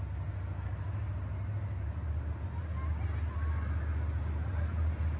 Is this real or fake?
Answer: real